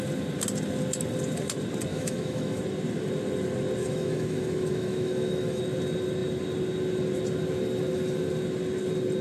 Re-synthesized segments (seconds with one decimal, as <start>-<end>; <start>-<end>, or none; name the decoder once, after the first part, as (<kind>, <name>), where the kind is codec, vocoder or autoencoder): 1.9-2.6 (autoencoder, DAC-VAE); 3.8-5.6